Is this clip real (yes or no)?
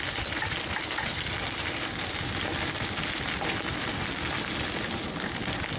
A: yes